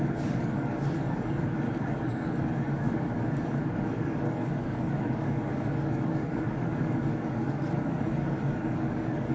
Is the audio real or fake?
fake